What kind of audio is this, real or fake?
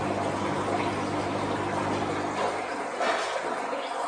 real